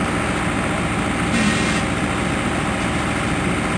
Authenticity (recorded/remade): recorded